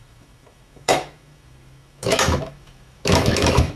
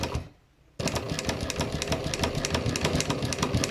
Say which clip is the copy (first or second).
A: first